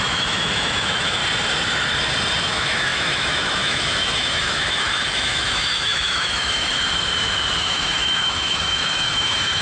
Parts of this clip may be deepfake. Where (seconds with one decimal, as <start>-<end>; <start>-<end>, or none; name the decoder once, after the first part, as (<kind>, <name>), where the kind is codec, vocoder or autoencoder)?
0.0-1.2 (autoencoder, DAC-VAE); 2.4-6.7; 7.6-9.6